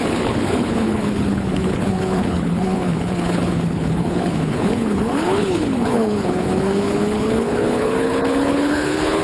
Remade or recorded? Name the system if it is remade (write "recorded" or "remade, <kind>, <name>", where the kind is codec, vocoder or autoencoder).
remade, codec, HILCodec